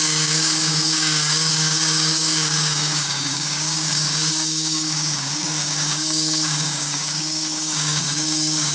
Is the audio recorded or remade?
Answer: remade